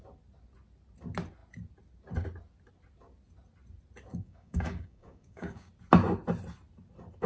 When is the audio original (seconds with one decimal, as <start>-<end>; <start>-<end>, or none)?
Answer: 0.0-4.1; 5.7-7.3

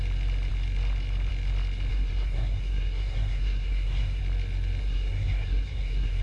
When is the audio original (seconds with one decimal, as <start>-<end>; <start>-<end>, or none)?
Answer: 0.0-1.9; 4.2-4.8

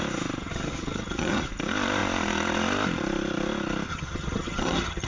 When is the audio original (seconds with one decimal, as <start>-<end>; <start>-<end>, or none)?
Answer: 0.0-0.4; 1.5-3.9

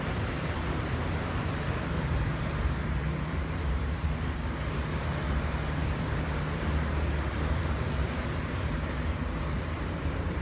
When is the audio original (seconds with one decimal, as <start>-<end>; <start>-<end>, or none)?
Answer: none

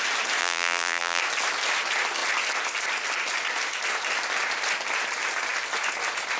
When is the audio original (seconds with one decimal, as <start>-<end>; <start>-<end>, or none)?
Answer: 0.0-0.4; 1.2-6.4

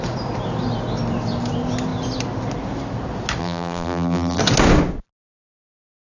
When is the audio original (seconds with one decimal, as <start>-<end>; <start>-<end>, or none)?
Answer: 0.0-3.4; 4.4-6.1

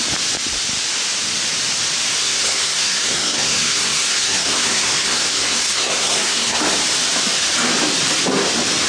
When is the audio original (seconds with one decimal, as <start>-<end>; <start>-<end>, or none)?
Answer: 0.0-2.2; 6.6-8.9